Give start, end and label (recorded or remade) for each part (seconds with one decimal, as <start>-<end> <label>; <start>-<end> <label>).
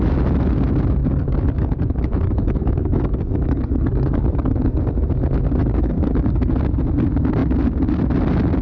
0.0-1.0 recorded; 1.0-4.8 remade; 4.8-5.6 recorded; 5.6-6.4 remade; 6.4-8.6 recorded